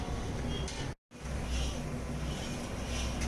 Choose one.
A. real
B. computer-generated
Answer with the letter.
A